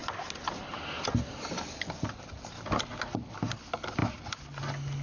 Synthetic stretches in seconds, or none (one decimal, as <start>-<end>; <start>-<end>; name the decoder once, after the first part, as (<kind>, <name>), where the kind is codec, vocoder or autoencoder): none